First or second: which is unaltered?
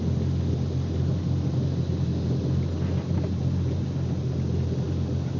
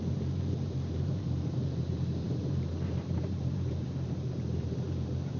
first